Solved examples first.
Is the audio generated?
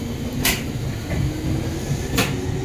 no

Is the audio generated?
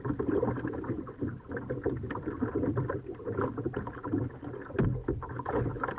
no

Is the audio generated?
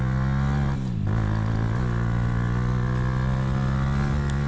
no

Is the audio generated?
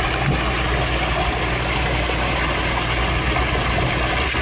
no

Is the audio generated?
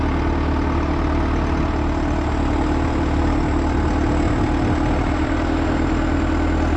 no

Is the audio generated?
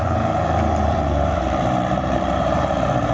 yes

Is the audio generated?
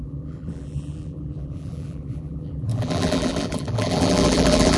yes